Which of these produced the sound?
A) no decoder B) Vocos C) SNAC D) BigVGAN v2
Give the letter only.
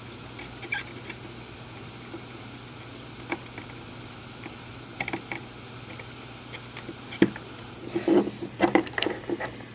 A